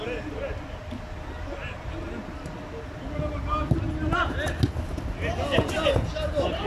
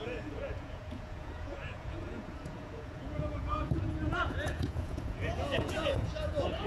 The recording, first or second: first